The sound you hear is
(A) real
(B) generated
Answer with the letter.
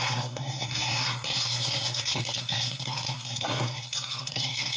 B